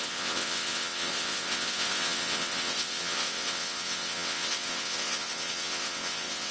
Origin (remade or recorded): remade